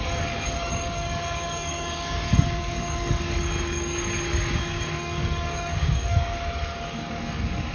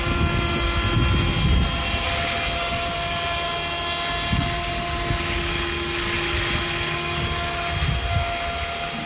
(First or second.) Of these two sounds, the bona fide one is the second